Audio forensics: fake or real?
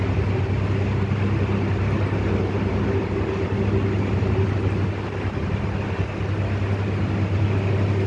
real